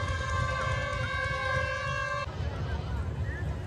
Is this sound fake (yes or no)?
no